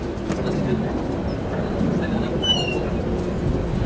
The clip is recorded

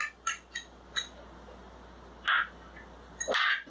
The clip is recorded